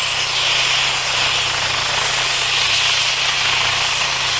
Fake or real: real